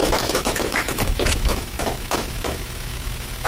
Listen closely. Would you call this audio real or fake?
fake